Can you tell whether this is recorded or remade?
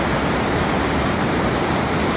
recorded